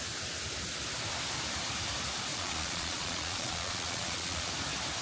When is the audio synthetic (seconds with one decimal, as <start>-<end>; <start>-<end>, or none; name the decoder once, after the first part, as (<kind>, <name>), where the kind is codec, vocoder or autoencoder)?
2.3-4.5 (vocoder, Vocos)